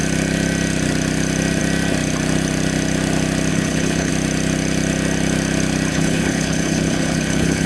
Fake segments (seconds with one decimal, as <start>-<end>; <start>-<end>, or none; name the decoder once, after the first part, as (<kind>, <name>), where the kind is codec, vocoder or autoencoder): 3.5-4.1 (codec, HILCodec); 5.9-7.7